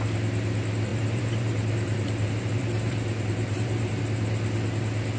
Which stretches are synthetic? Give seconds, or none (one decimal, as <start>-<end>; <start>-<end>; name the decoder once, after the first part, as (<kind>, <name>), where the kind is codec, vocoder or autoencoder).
0.9-4.0 (vocoder, BigVGAN v2)